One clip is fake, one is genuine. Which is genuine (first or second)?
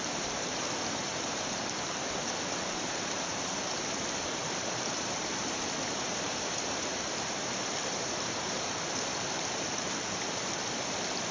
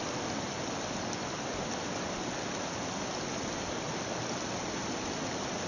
second